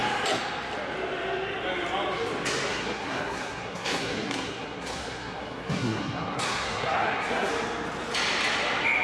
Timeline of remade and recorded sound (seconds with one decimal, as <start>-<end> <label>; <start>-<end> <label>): 0.0-2.7 recorded; 2.7-7.5 remade; 7.5-9.0 recorded